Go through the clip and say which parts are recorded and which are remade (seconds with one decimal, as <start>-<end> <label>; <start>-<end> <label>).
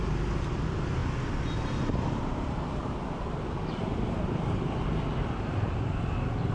0.0-3.8 recorded; 3.8-5.8 remade; 5.8-6.5 recorded